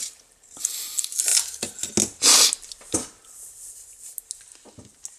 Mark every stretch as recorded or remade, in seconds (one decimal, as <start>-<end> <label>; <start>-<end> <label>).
0.0-5.2 recorded